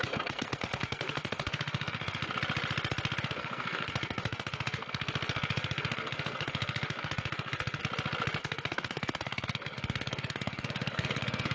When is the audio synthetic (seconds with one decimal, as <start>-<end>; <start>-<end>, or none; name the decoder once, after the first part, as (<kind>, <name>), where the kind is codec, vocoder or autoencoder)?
0.0-2.2 (codec, SNAC); 3.2-7.8; 8.4-11.5